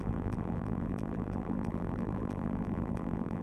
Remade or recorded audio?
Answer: remade